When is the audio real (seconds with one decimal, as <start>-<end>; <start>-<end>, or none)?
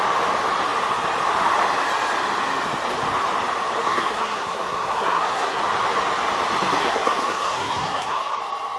0.0-3.8; 5.6-6.8; 8.4-8.8